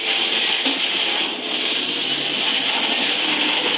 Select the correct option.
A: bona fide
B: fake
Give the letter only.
A